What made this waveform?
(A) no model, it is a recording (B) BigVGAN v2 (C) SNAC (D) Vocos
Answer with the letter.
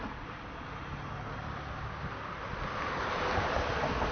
A